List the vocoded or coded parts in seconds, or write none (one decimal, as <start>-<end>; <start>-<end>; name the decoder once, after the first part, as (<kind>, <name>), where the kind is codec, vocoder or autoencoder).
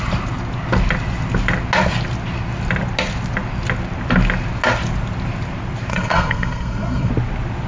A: 5.9-7.1 (codec, SNAC)